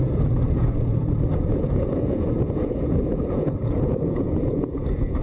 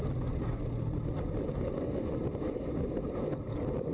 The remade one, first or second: first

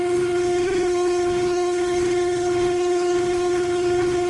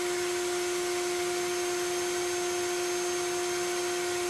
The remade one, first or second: first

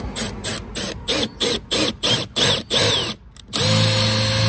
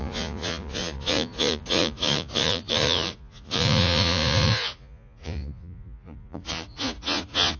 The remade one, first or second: second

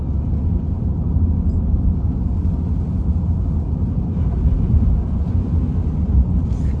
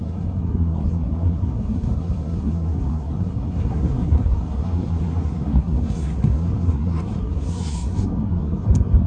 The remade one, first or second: second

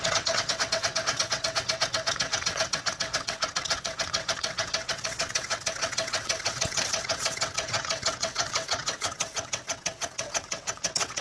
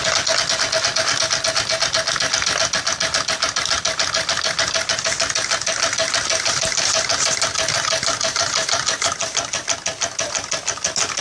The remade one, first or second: first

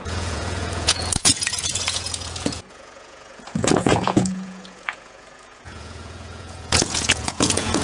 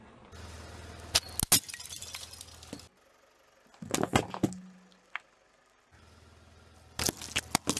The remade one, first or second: first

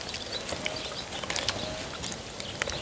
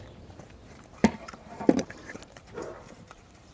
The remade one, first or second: second